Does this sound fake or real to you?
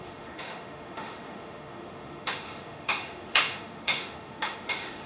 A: fake